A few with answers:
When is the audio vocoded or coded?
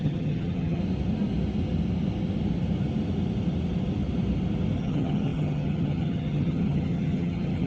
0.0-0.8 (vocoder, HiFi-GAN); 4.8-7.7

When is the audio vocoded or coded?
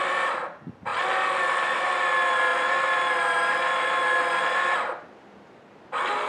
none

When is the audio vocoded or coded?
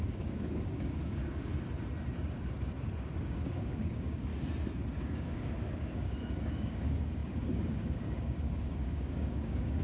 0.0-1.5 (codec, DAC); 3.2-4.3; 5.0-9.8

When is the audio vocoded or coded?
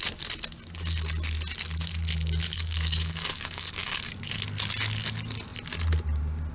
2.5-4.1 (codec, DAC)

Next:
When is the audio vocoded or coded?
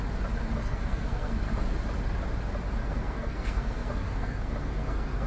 0.6-1.7 (codec, SNAC); 2.8-5.3